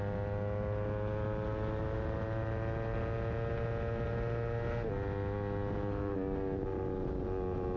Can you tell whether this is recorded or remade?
recorded